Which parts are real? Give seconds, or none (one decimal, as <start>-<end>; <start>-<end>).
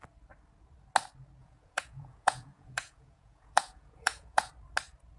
0.0-1.4; 4.5-5.2